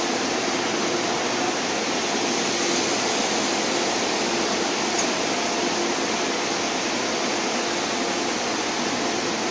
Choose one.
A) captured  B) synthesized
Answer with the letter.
A